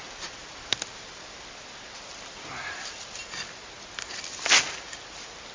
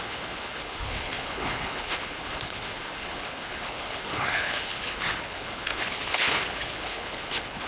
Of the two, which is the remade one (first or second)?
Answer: second